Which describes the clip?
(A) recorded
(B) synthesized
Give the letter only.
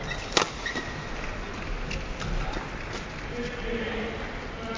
A